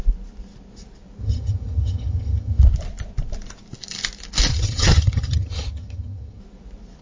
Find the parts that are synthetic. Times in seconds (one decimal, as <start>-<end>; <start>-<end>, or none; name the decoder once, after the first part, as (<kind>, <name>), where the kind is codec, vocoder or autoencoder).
1.2-2.6 (vocoder, HiFi-GAN); 4.5-6.4